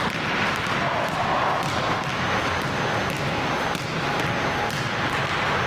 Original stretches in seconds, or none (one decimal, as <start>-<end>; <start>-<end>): 0.0-5.7